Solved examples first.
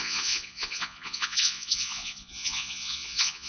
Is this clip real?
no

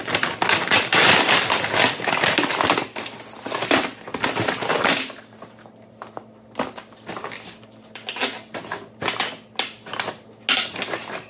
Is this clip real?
yes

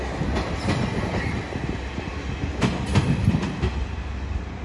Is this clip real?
yes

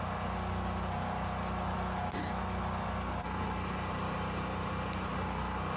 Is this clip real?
yes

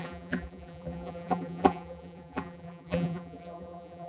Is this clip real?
no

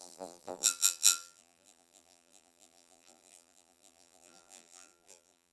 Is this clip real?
no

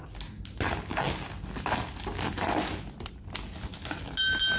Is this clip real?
yes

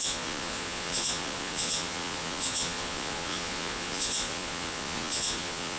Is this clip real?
no